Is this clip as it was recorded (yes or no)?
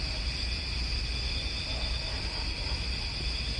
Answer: yes